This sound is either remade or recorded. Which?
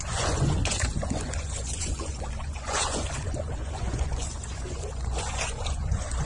remade